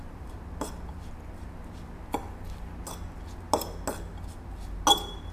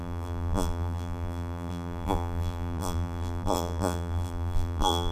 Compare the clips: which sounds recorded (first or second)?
first